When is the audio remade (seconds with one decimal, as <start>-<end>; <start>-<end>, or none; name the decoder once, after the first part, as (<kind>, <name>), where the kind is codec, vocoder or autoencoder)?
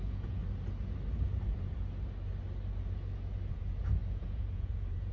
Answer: 0.0-0.4 (vocoder, Vocos); 3.5-5.1